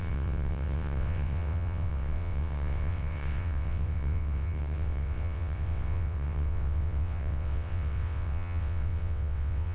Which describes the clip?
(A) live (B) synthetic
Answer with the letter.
B